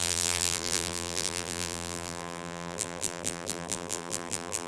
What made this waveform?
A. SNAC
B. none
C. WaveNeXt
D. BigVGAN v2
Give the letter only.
D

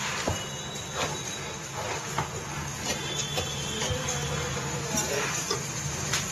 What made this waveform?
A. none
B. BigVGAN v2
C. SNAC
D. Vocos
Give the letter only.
A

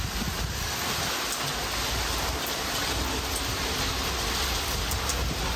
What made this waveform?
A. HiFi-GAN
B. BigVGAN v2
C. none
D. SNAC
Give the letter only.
C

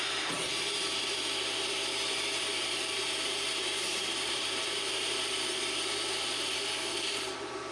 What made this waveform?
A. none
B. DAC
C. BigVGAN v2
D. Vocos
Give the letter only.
C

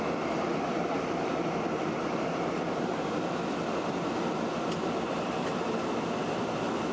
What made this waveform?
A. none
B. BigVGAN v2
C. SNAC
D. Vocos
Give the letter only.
B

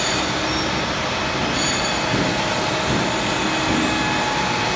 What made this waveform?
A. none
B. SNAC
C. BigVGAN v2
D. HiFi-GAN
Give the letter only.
A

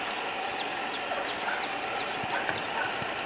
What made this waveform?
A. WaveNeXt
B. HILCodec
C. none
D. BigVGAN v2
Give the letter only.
C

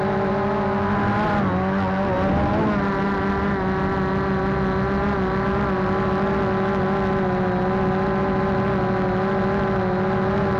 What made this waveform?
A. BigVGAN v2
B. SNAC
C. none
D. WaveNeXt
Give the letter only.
C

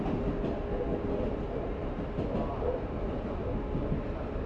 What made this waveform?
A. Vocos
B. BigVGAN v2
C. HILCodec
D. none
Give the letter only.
D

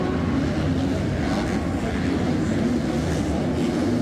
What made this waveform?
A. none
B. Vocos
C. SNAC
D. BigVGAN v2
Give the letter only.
A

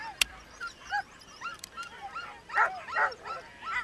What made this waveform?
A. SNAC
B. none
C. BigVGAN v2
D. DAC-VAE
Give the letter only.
C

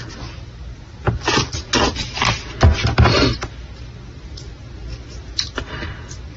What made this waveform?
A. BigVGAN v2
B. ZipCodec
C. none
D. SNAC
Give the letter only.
C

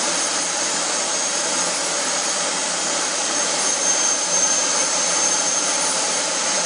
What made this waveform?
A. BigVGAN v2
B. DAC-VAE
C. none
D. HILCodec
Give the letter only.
A